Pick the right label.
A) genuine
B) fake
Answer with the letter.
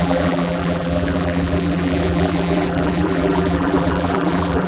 B